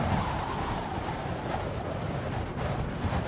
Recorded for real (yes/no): yes